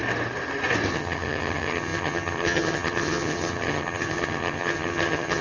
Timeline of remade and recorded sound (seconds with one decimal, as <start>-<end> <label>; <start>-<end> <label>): 0.0-0.9 recorded; 0.9-5.4 remade